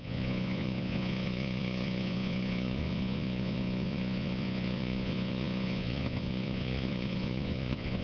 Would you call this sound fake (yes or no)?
yes